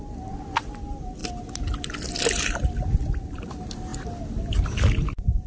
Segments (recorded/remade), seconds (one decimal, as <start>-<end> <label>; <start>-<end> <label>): 0.0-5.5 recorded